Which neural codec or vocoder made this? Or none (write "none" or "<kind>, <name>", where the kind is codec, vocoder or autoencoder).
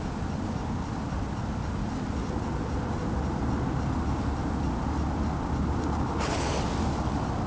none